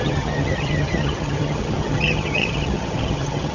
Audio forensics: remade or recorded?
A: remade